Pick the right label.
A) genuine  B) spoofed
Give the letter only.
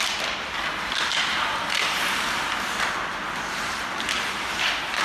A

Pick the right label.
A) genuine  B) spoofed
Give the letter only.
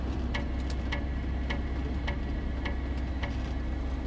A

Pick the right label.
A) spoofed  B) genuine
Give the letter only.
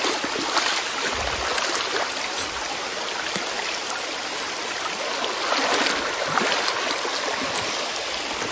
B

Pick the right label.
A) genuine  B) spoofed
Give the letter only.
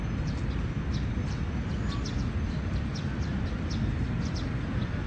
A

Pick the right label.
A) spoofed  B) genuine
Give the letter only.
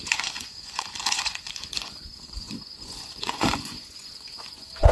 A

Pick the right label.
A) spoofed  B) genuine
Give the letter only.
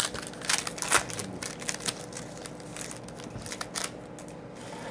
B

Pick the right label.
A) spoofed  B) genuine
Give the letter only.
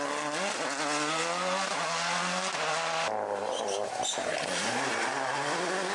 B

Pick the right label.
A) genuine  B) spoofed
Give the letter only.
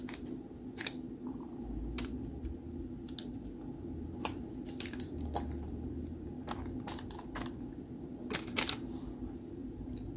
A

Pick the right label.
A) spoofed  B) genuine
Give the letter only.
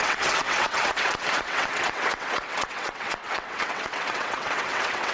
A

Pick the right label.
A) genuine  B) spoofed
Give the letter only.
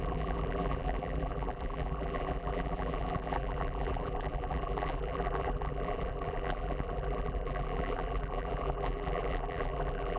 B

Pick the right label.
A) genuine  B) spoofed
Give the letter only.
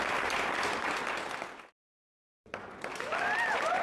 A